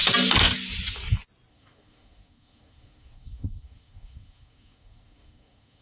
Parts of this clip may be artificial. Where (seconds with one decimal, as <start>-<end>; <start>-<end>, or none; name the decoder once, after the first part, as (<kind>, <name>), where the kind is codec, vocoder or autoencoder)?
1.5-5.8 (codec, SNAC)